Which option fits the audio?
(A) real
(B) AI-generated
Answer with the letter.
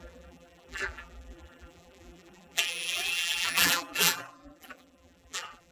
B